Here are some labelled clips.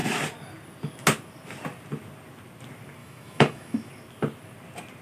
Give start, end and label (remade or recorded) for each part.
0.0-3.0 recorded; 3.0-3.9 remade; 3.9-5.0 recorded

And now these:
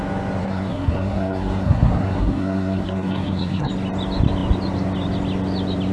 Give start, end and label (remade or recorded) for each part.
0.0-0.4 recorded; 0.4-3.7 remade; 3.7-5.9 recorded

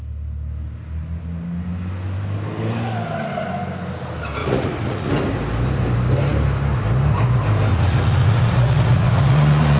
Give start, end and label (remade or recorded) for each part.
0.0-4.4 recorded; 4.4-5.1 remade; 5.1-7.7 recorded; 7.7-9.8 remade

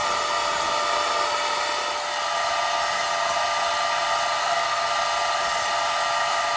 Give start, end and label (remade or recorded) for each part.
0.0-4.4 recorded; 4.4-4.9 remade; 4.9-6.6 recorded

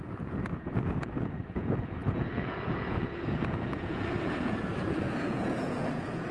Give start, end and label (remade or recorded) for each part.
0.0-6.3 remade

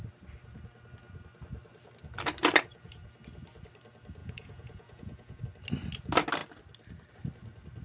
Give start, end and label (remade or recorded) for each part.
0.0-4.2 recorded; 4.2-5.4 remade; 5.4-7.8 recorded

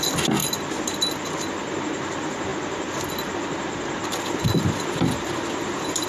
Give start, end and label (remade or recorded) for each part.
0.0-6.1 recorded

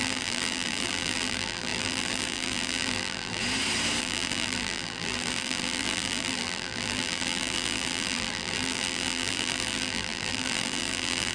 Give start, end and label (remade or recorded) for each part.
0.0-3.4 remade; 3.4-4.0 recorded; 4.0-11.3 remade